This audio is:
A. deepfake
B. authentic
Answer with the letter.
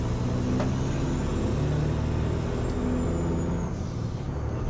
B